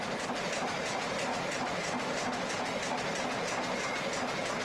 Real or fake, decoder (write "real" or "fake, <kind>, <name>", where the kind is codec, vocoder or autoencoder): real